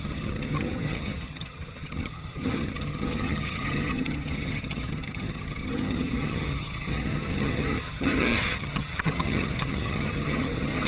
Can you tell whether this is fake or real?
fake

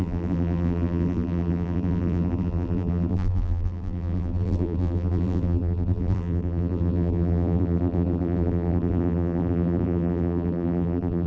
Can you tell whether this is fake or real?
fake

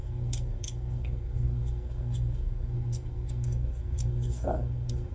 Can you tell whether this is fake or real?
fake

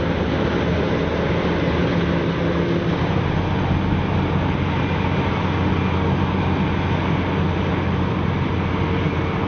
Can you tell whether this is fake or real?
real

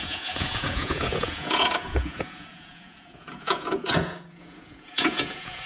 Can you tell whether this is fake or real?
fake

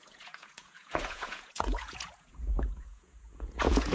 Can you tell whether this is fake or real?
fake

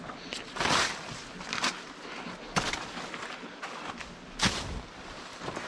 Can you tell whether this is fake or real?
real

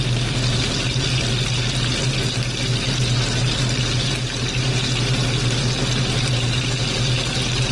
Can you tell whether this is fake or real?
real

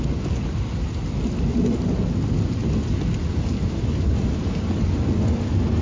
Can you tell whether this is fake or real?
real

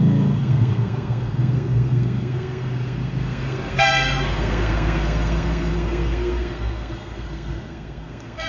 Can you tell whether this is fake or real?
fake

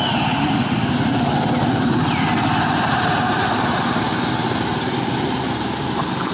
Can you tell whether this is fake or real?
real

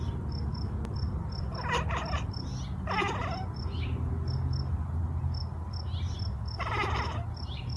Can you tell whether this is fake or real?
real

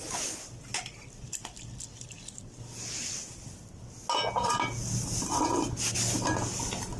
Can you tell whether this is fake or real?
real